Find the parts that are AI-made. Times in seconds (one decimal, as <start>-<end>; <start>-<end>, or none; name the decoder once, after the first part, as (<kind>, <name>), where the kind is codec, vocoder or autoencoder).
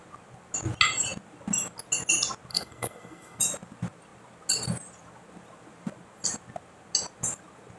2.5-3.4 (codec, SNAC)